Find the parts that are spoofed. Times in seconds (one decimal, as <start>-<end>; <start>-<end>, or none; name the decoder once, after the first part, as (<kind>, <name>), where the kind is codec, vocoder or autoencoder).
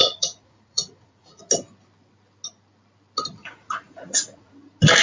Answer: 0.0-1.4 (vocoder, Vocos); 3.4-4.5